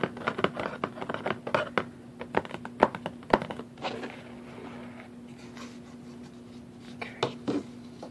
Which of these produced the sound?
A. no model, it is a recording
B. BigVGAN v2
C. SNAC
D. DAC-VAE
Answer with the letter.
A